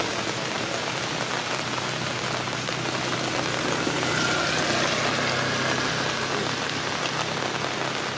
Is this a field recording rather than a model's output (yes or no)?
yes